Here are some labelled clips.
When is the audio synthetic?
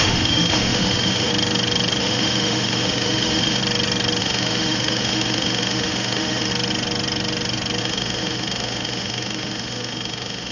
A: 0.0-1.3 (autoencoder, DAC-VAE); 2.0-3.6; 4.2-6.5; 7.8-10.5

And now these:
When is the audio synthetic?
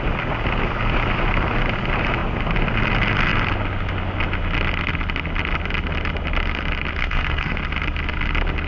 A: 7.0-7.6 (codec, SNAC)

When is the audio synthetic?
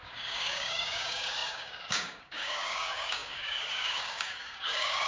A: 0.0-5.1 (codec, DAC)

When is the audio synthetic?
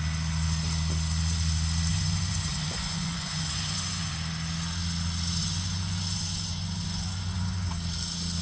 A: 1.9-4.1 (vocoder, Vocos); 5.4-7.7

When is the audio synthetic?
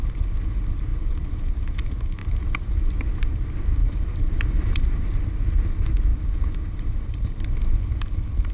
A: 0.9-1.6 (vocoder, BigVGAN v2); 2.2-3.0; 3.8-4.9; 6.1-7.4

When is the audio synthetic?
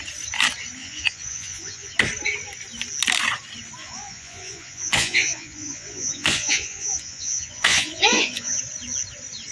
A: 0.8-1.9 (vocoder, Vocos); 3.8-8.6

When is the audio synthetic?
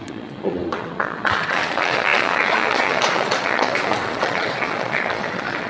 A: 0.0-5.7 (vocoder, Vocos)